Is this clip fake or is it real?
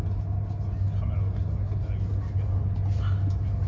real